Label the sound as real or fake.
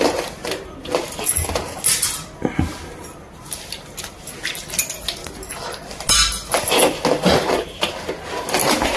real